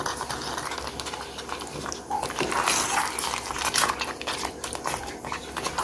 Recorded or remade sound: recorded